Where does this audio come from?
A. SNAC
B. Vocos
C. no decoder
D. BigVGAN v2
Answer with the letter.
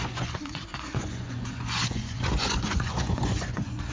B